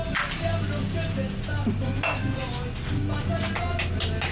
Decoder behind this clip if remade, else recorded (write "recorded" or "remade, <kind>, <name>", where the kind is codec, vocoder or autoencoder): recorded